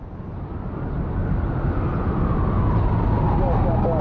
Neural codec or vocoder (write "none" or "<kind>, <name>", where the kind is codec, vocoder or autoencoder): none